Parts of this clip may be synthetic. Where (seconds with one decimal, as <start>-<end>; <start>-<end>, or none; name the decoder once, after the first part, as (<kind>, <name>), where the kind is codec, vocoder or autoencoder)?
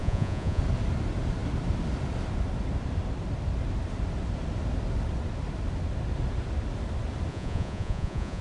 0.0-0.6 (vocoder, Vocos); 7.3-8.4